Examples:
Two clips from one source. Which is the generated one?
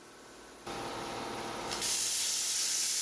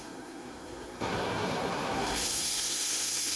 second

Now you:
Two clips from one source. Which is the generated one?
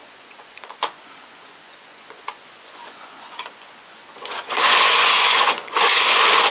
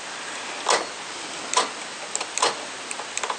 first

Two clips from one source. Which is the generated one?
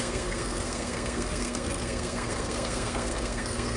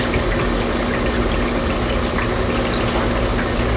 first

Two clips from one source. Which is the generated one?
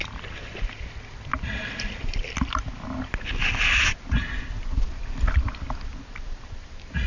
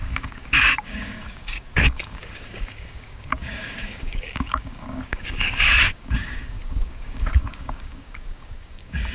second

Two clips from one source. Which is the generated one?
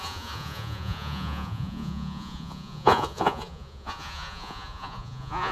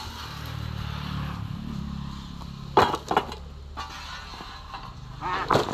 first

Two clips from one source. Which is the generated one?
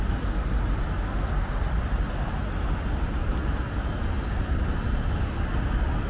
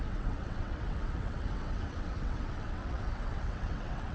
second